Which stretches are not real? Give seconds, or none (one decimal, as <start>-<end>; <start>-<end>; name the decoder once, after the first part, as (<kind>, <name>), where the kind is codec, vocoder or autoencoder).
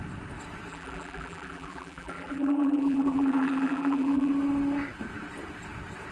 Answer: 0.7-4.3 (vocoder, BigVGAN v2)